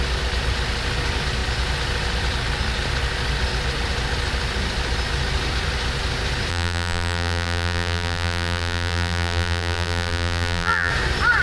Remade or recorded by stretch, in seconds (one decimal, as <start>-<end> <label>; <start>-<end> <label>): 0.0-6.5 recorded; 6.5-10.9 remade; 10.9-11.4 recorded